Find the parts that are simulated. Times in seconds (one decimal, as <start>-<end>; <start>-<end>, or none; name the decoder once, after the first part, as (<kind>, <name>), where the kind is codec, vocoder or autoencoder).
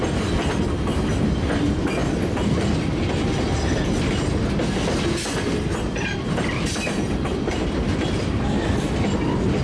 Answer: none